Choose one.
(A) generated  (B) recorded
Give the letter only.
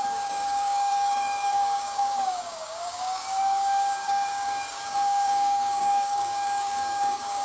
A